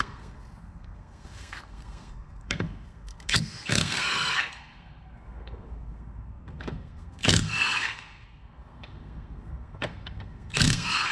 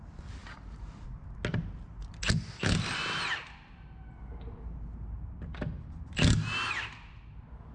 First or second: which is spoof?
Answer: first